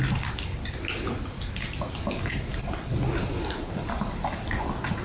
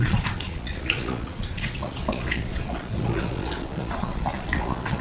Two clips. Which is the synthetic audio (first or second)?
second